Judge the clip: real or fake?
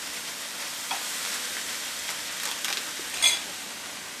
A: real